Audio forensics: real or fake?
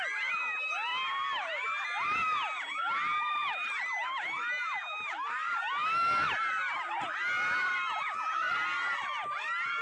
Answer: real